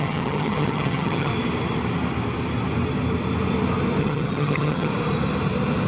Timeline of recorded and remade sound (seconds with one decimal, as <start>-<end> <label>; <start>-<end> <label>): 0.0-1.3 remade; 1.3-4.0 recorded; 4.0-4.9 remade; 4.9-5.9 recorded